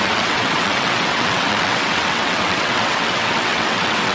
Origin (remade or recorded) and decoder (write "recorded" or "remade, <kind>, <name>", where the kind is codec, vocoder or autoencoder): remade, vocoder, WaveNeXt